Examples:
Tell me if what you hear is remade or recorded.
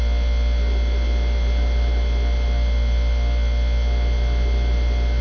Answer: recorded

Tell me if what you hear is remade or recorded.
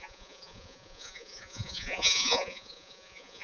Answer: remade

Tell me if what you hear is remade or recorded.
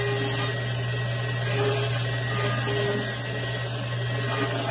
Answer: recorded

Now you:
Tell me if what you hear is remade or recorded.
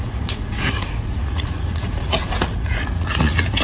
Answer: remade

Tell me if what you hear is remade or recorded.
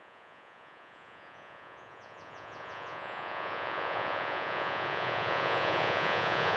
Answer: remade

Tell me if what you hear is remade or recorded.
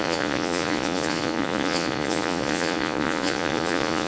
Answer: remade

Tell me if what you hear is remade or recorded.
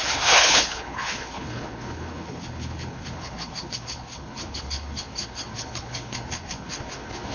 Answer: remade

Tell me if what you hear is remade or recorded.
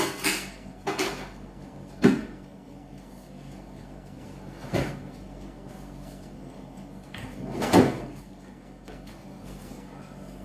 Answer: remade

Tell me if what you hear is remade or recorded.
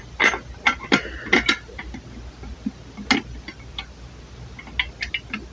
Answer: recorded